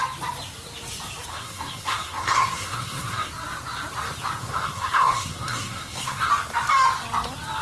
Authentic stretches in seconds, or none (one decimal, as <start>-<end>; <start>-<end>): 0.0-1.3; 3.3-4.4; 6.3-7.6